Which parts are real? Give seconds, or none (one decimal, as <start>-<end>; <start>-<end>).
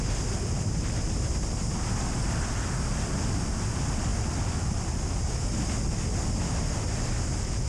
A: 0.0-7.7